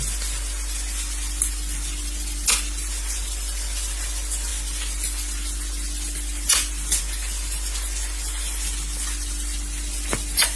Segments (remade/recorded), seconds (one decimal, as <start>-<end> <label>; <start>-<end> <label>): 0.0-10.6 recorded